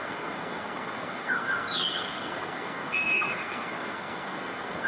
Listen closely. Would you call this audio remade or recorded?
remade